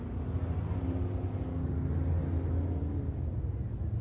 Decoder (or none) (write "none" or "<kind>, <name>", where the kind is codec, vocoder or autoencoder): none